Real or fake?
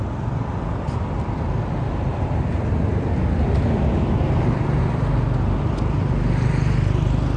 real